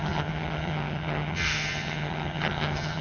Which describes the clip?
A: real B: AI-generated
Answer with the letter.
B